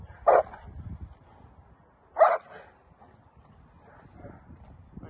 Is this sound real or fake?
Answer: real